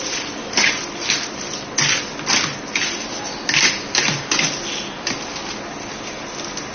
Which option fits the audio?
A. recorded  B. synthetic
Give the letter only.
A